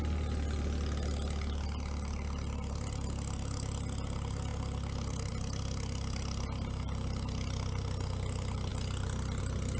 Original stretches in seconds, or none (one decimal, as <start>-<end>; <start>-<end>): 0.0-9.8